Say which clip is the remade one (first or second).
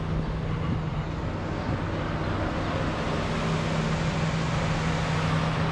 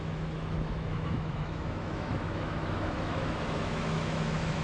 second